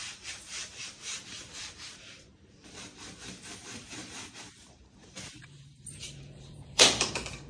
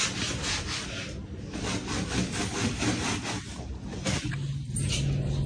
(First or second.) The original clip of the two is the second